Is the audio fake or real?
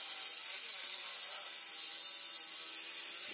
real